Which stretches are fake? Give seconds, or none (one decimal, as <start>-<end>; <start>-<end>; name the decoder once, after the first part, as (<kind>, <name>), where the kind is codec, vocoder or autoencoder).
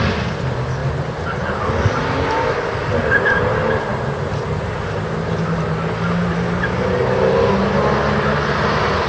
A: none